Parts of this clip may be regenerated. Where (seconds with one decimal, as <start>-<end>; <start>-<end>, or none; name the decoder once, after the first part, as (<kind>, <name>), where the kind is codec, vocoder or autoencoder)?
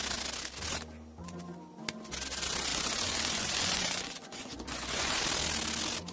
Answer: 2.7-5.2 (vocoder, Vocos)